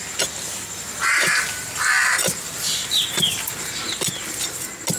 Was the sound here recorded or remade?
recorded